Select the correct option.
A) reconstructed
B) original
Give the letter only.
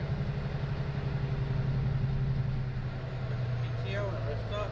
B